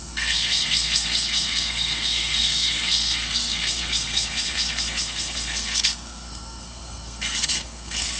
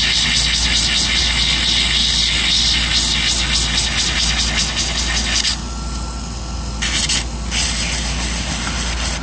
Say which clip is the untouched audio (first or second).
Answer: second